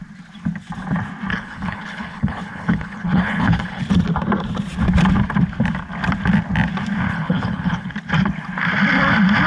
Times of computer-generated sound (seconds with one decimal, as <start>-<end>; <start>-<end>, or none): 1.3-3.8; 7.1-7.9